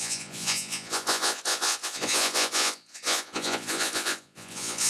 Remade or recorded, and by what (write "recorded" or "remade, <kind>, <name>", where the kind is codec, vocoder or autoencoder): remade, vocoder, Vocos